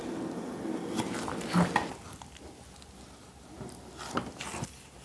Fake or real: real